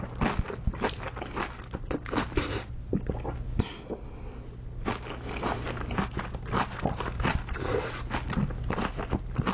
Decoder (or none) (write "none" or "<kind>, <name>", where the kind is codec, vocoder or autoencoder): none